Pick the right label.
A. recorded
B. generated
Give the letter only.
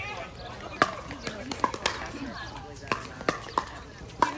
A